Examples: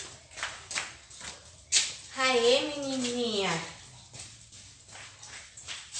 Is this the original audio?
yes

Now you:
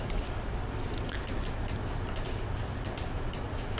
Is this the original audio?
no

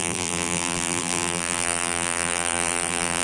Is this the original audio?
no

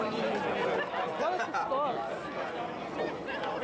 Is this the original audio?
yes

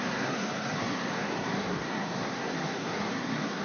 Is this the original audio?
no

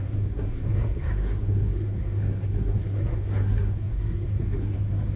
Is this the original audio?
no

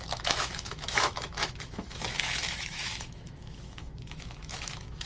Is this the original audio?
no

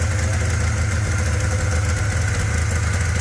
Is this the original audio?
yes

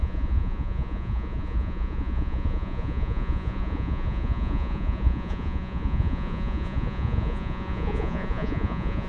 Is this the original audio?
no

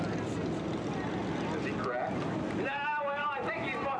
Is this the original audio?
yes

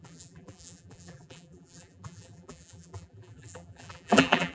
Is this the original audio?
no